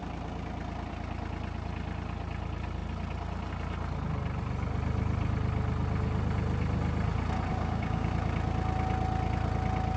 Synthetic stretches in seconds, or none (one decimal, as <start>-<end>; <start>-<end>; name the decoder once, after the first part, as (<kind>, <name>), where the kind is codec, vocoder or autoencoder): 7.5-8.1 (codec, DAC)